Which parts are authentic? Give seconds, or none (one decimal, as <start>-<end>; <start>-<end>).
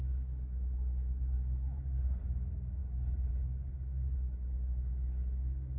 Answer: 0.0-5.8